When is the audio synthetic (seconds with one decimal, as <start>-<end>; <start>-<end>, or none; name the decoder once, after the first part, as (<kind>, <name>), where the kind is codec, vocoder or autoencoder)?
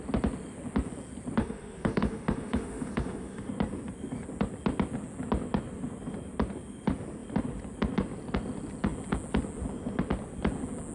1.4-3.5 (autoencoder, DAC-VAE)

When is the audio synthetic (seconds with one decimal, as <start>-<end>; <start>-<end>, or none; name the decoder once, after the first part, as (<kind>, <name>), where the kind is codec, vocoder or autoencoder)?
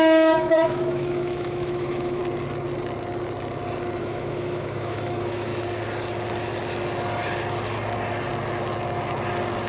0.0-2.2 (autoencoder, DAC-VAE); 4.0-5.5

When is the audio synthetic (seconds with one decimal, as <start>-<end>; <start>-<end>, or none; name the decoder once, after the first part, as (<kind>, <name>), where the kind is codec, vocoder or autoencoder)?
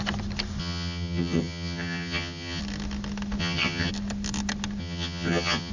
0.6-2.6 (vocoder, HiFi-GAN); 3.4-3.9; 4.8-5.7